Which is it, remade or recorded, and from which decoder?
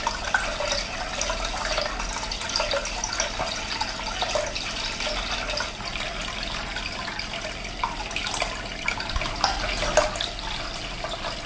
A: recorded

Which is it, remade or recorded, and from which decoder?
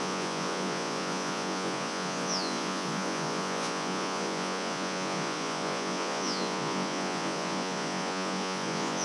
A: remade, vocoder, Vocos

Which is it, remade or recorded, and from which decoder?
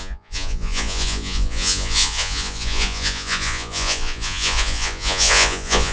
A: remade, vocoder, Vocos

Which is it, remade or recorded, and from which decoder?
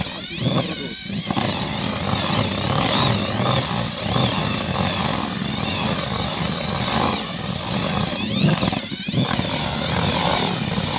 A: recorded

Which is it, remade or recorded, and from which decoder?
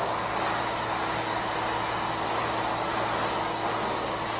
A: recorded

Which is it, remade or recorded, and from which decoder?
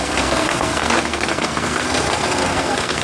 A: remade, codec, SNAC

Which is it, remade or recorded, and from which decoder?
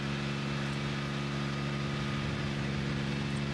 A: recorded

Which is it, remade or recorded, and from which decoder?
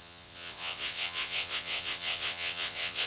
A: remade, vocoder, WaveNeXt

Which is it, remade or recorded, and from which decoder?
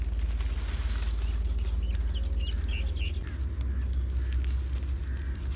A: recorded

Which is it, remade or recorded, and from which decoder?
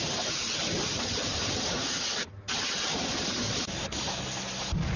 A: recorded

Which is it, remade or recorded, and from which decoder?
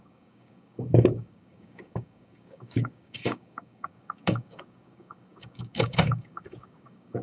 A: remade, codec, DAC